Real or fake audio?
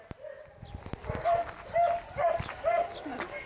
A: real